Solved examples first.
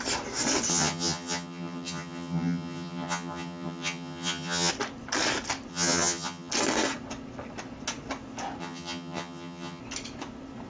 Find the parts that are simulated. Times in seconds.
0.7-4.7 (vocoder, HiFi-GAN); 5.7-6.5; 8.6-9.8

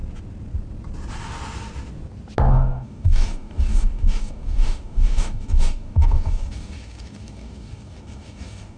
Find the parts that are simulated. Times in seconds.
2.5-8.8 (codec, DAC)

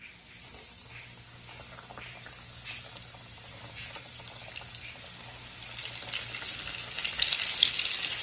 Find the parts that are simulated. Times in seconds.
0.9-1.7 (codec, DAC)

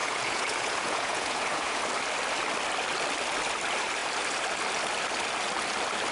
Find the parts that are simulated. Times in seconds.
0.0-1.8 (vocoder, Vocos)

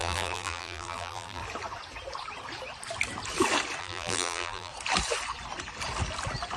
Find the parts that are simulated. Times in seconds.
0.0-1.4 (vocoder, BigVGAN v2); 3.8-4.7

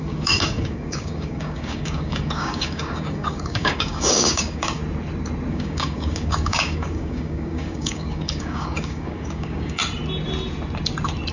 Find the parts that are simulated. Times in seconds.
0.0-4.8 (codec, DAC); 5.5-9.8

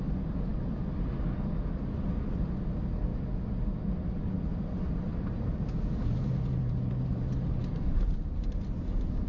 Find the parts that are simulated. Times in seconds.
4.5-8.8 (vocoder, BigVGAN v2)

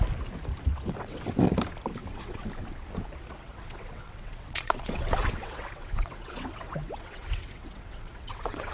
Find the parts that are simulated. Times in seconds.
0.7-1.2 (vocoder, WaveNeXt); 2.0-2.5; 3.4-8.7